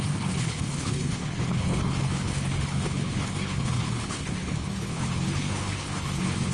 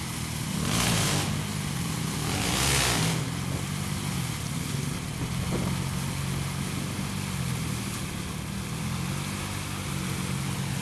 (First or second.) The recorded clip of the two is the second